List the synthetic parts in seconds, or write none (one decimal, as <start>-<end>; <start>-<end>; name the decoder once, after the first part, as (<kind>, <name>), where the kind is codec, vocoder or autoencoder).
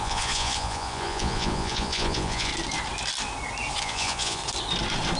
0.0-2.5 (vocoder, Vocos); 3.8-4.4